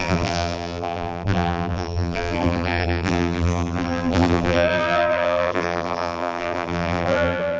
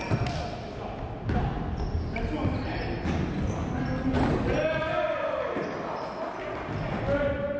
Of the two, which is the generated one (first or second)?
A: first